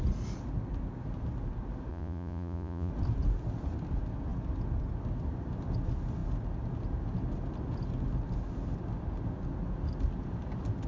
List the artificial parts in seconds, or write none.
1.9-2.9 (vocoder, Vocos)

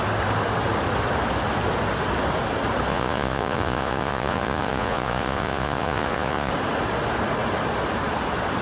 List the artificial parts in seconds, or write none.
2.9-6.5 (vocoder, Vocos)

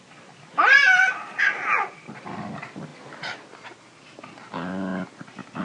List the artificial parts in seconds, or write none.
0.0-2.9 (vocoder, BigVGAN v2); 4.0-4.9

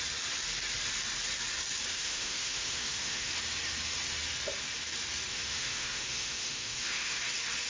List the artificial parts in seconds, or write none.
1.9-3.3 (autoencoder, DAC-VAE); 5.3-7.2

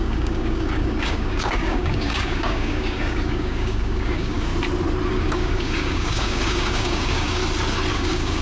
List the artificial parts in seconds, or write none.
0.0-4.5 (codec, DAC); 5.1-7.4; 7.9-8.4

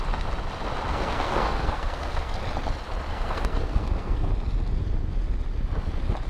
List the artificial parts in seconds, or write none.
0.9-2.4 (codec, SNAC); 3.1-4.3

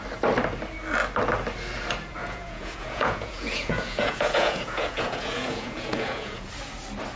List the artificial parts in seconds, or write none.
2.2-6.5 (vocoder, Vocos)

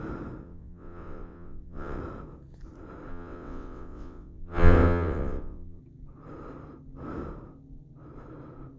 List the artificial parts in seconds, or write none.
0.4-2.0 (vocoder, WaveNeXt); 3.1-5.8